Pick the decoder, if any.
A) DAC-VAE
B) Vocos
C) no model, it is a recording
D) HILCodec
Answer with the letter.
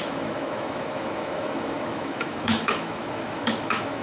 A